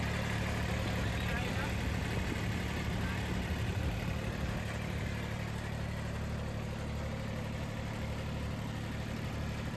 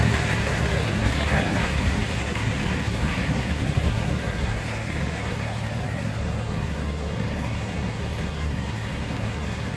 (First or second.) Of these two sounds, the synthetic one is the second